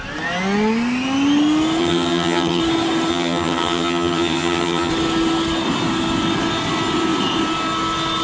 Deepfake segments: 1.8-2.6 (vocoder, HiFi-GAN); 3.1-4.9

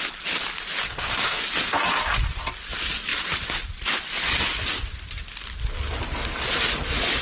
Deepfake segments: 0.8-1.4 (codec, SNAC)

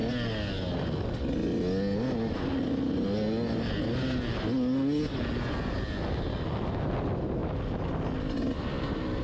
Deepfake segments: none

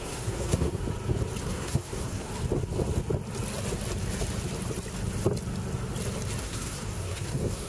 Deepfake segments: 0.0-0.8 (codec, SNAC); 1.4-2.3; 6.4-7.7

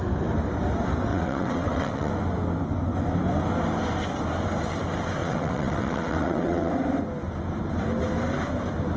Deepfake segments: 1.1-2.1 (vocoder, WaveNeXt); 5.2-6.7

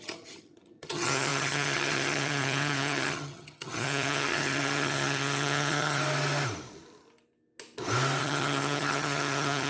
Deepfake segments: 0.0-6.0 (vocoder, HiFi-GAN); 8.2-9.7

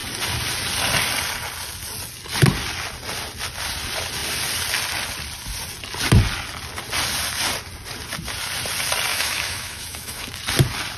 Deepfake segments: 9.1-10.3 (autoencoder, DAC-VAE)